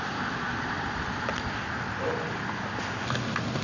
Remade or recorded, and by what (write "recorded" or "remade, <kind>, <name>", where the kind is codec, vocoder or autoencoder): recorded